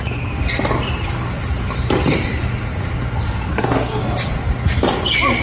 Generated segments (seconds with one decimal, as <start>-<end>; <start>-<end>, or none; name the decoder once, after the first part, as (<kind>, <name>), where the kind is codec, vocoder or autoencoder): 3.5-4.0 (codec, SNAC)